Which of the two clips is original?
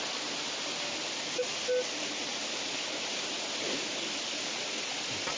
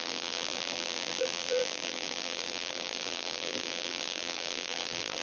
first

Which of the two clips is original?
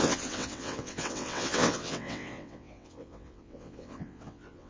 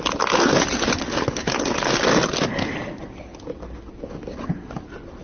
second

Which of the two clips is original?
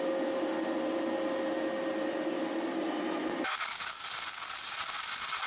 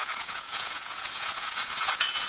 first